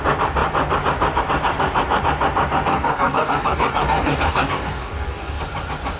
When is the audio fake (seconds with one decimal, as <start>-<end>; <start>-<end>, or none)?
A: 2.7-5.4